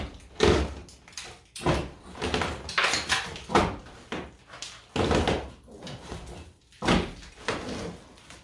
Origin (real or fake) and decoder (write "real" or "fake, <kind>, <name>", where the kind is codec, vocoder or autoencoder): real